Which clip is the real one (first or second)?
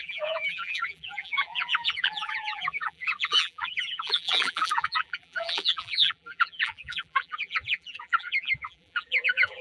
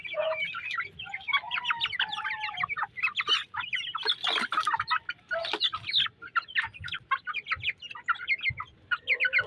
second